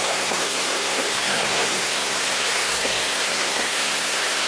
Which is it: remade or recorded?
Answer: remade